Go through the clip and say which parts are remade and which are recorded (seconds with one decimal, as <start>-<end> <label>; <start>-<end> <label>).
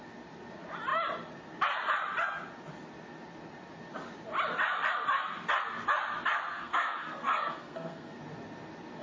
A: 0.0-6.5 recorded; 6.5-8.2 remade; 8.2-9.0 recorded